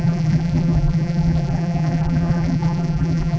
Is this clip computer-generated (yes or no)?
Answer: yes